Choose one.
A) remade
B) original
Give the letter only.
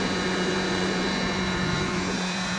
A